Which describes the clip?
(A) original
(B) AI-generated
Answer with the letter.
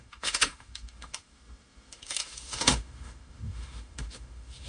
B